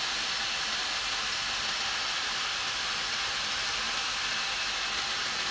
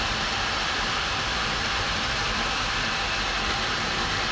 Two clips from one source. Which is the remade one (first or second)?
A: second